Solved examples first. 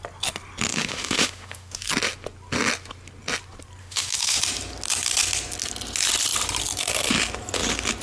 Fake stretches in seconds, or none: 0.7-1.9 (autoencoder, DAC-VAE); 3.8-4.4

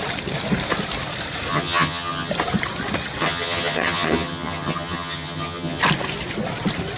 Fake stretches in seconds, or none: 1.5-2.3 (vocoder, HiFi-GAN); 3.2-5.8

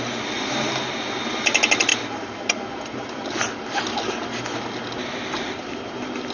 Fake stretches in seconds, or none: none

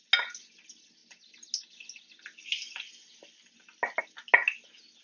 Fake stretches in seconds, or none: none